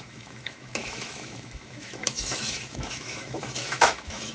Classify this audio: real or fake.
fake